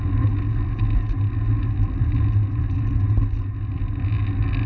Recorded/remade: recorded